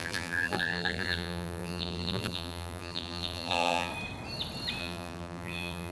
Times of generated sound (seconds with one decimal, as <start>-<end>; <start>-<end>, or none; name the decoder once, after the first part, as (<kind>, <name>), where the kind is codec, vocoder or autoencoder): 0.0-3.9 (vocoder, BigVGAN v2); 4.8-5.9